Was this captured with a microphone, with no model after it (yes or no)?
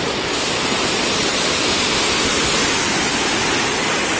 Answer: yes